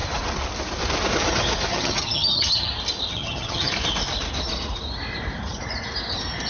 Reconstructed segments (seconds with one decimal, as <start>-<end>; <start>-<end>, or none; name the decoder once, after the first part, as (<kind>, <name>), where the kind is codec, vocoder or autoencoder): 1.7-2.7 (vocoder, HiFi-GAN); 3.1-3.7